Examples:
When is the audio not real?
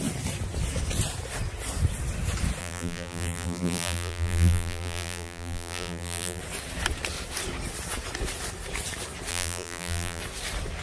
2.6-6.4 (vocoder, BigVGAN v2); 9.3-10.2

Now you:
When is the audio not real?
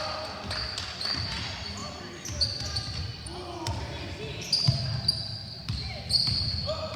none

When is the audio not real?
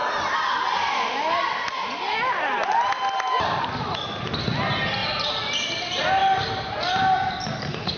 5.0-5.5 (vocoder, BigVGAN v2); 6.2-8.0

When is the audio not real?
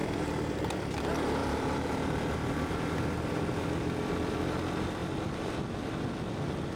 1.4-2.7 (vocoder, BigVGAN v2); 5.0-5.9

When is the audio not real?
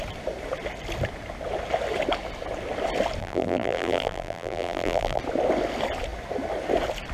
3.2-5.2 (vocoder, BigVGAN v2)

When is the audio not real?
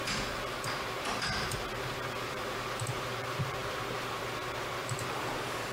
0.8-3.6 (vocoder, BigVGAN v2); 4.2-5.7